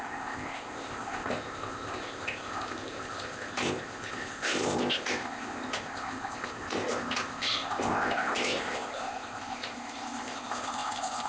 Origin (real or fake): fake